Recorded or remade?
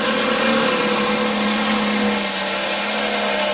recorded